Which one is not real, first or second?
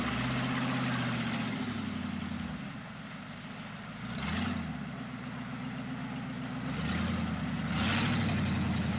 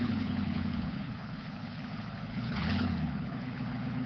second